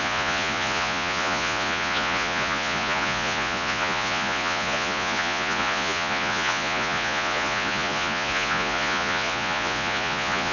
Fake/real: fake